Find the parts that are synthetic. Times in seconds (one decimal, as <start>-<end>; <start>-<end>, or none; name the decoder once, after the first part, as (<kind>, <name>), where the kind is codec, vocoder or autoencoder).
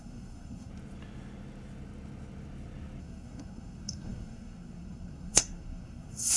0.0-0.7 (codec, SNAC); 3.0-6.4